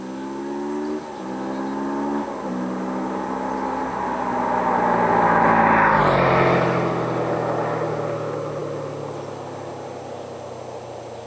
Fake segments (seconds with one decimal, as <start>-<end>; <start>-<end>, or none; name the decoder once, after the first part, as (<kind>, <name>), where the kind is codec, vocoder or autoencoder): none